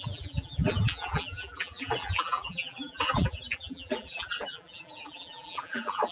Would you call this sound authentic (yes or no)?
no